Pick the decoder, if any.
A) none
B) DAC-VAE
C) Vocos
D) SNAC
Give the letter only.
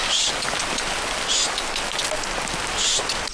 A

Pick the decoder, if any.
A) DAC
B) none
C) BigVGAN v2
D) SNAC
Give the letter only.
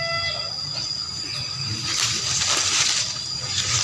B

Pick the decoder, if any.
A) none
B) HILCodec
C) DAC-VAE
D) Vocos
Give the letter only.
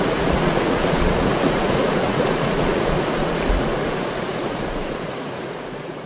D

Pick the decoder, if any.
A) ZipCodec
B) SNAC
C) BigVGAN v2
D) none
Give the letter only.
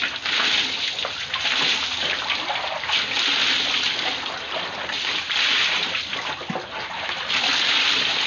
D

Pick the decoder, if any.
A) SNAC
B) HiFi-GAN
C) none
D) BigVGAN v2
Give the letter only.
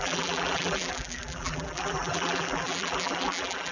D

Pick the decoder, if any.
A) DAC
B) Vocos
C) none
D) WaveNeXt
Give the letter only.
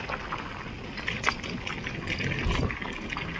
C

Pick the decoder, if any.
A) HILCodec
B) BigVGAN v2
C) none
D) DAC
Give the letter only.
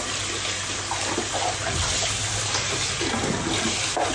C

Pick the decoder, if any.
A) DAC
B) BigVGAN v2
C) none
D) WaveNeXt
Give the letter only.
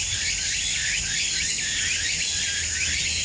C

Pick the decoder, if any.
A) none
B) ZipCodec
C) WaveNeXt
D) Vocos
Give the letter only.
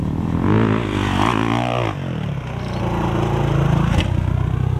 A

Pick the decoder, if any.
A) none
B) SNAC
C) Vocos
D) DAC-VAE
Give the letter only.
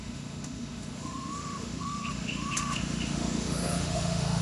D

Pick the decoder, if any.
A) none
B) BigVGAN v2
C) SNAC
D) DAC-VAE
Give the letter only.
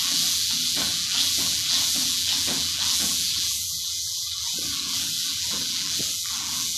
B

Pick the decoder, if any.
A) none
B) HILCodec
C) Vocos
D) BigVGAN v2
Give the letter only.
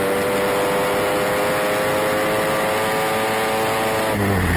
A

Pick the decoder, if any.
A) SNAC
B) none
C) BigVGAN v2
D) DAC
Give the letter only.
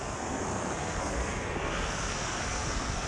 A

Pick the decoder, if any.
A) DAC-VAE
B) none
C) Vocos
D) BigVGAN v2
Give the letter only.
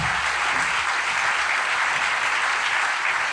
B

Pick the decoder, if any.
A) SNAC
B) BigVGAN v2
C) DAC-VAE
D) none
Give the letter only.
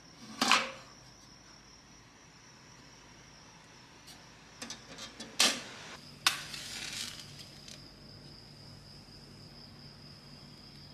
D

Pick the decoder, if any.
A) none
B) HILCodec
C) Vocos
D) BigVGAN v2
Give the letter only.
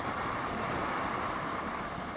D